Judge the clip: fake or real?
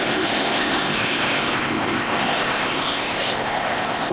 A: fake